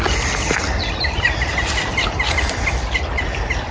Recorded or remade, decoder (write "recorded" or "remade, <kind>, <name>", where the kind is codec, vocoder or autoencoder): recorded